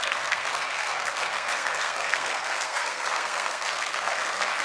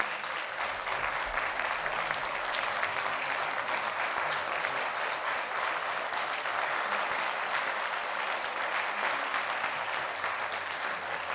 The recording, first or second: second